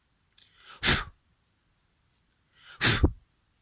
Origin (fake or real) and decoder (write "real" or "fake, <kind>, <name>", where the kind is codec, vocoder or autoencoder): real